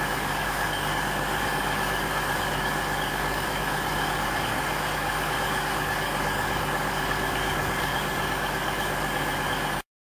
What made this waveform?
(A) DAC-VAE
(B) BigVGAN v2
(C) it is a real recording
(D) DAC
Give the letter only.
D